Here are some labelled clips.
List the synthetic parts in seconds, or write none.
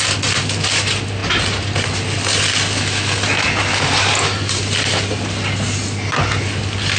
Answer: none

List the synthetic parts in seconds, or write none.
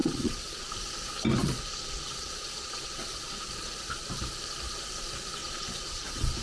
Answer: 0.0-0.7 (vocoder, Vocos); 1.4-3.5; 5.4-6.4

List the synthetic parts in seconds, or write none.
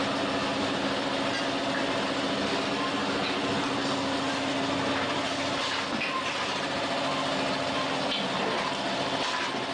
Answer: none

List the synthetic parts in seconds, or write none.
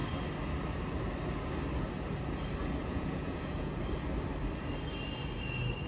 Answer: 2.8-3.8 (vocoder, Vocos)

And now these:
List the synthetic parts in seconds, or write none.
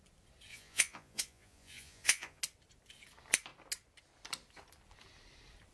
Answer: 0.5-2.4 (vocoder, Vocos)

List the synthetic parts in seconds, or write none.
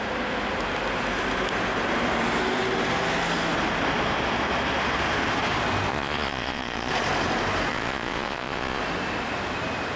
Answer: 5.9-6.9 (vocoder, Vocos); 7.7-8.8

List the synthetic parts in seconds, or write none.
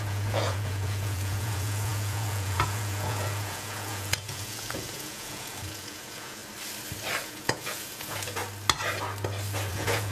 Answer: 0.0-6.4 (vocoder, Vocos); 7.2-8.4; 9.7-10.1